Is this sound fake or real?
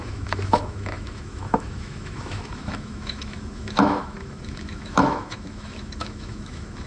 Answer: fake